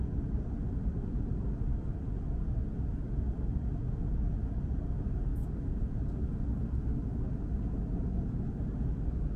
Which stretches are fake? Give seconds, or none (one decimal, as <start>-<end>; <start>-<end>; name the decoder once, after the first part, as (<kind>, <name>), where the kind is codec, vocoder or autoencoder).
none